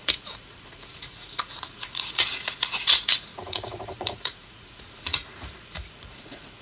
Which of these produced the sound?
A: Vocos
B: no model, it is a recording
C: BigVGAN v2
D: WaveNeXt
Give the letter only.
A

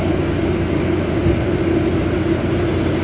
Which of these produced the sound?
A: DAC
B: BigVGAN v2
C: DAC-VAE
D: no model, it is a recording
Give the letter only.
D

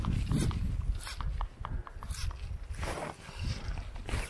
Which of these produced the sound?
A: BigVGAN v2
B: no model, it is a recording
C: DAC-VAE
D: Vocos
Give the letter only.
B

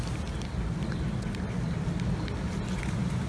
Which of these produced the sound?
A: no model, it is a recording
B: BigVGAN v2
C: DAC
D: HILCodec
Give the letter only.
A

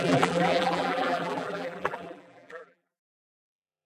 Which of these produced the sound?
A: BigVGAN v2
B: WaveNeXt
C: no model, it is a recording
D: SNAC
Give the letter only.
A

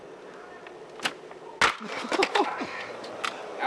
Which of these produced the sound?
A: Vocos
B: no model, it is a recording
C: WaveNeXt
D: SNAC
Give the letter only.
B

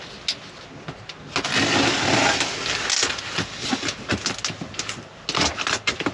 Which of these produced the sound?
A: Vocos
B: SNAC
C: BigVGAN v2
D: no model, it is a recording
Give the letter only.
D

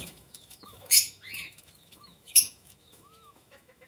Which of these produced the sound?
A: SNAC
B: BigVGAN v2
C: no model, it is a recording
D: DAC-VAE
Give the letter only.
D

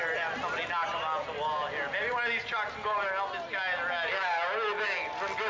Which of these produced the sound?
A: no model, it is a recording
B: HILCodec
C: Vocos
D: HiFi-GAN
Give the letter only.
A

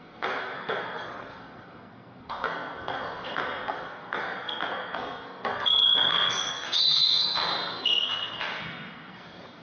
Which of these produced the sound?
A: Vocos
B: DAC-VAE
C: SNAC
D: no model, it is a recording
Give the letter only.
C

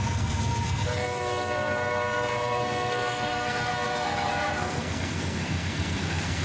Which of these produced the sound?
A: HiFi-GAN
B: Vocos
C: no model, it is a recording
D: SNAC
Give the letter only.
D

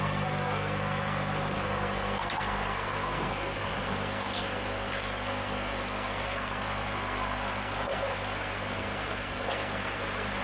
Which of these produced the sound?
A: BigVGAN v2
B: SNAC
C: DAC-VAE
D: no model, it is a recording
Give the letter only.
B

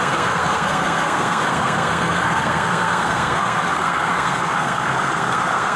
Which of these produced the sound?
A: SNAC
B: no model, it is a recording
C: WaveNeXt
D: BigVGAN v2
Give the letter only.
A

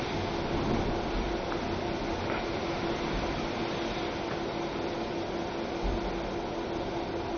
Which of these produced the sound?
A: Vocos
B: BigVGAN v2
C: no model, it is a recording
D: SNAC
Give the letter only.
C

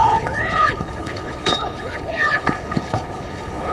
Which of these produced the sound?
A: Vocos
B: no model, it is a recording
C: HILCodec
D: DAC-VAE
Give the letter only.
C